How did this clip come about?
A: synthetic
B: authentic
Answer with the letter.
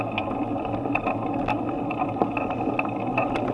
B